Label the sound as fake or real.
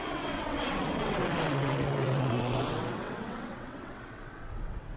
fake